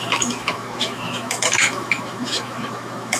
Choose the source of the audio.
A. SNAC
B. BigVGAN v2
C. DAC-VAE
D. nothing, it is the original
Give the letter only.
C